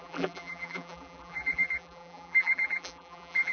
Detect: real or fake fake